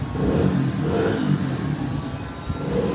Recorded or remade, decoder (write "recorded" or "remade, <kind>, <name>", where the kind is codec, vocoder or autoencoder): recorded